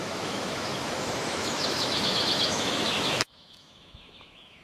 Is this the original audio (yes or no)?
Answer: no